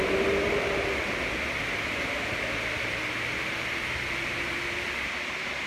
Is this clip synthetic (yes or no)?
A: no